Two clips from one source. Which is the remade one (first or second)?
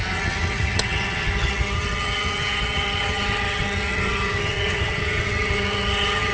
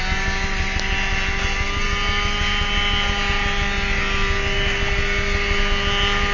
first